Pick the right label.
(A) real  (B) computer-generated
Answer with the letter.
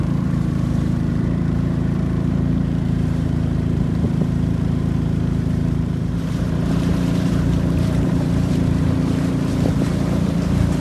B